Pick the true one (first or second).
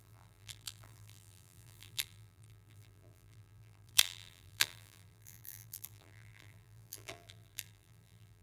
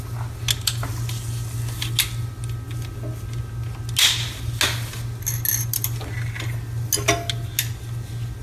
second